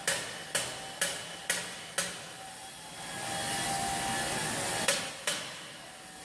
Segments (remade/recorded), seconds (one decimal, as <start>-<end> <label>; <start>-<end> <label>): 0.0-6.2 recorded